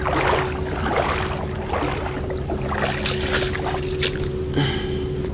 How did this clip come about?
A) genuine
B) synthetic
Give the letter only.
A